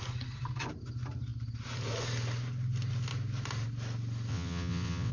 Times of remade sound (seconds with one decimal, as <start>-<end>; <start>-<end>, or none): 4.3-5.1